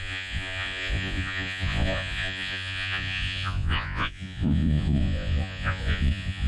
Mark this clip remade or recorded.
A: remade